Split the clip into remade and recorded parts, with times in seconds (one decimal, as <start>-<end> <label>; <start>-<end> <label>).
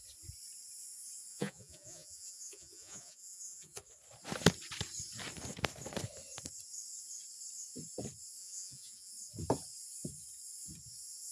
0.0-1.3 recorded; 1.3-3.8 remade; 3.8-8.4 recorded; 8.4-9.1 remade; 9.1-11.3 recorded